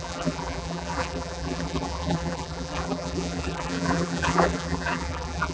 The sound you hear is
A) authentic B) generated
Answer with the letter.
B